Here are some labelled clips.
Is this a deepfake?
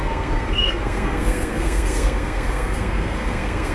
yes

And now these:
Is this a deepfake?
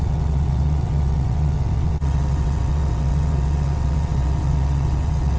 yes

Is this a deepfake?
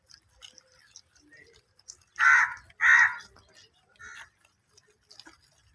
no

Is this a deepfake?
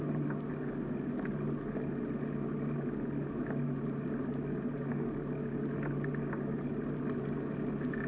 no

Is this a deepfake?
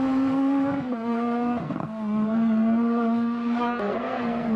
yes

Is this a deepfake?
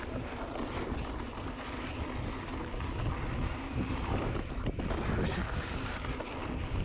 no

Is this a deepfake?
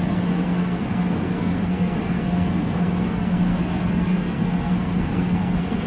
yes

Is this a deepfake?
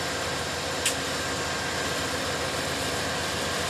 no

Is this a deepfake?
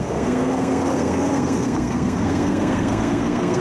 yes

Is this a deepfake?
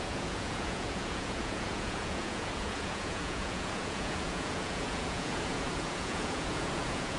yes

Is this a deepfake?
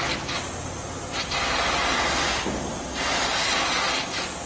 no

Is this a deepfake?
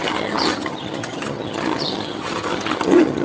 yes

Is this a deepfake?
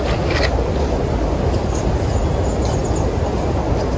no